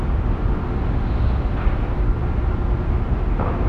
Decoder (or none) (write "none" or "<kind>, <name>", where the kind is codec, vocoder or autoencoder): none